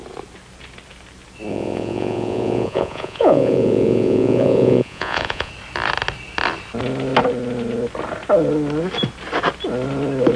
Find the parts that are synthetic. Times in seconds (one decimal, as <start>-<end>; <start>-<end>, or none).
1.5-5.5